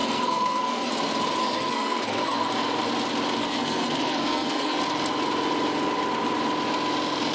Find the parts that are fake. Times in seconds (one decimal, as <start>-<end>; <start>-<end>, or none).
0.0-0.9; 1.4-2.5; 3.4-4.8